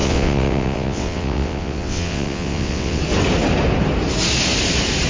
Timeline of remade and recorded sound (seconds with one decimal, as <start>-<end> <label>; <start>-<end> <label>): 0.0-3.0 remade; 3.0-5.1 recorded